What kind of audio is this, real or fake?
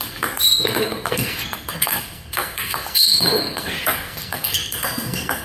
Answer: fake